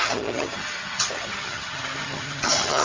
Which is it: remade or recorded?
remade